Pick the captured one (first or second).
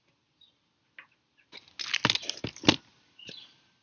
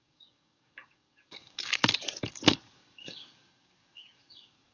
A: first